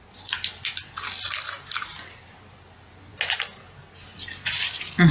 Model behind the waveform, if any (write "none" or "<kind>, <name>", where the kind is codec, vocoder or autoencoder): vocoder, BigVGAN v2